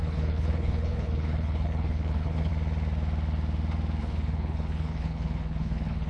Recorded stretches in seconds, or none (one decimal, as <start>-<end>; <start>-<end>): 2.5-4.0